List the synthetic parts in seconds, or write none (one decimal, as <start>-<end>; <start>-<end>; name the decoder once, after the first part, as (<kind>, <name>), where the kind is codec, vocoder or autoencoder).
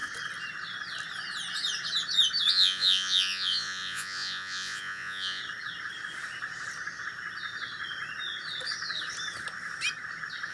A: 2.5-5.4 (vocoder, Vocos)